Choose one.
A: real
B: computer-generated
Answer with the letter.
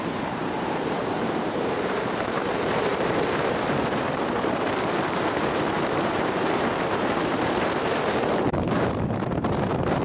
B